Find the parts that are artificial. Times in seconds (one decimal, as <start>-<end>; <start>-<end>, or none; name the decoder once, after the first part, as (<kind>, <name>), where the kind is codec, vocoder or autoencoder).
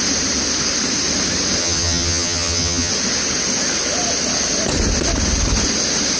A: 1.6-2.9 (vocoder, HiFi-GAN)